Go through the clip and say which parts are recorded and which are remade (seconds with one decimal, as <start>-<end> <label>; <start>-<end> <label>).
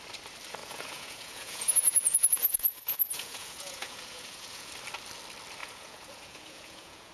0.0-0.6 recorded; 0.6-4.7 remade; 4.7-5.6 recorded; 5.6-7.1 remade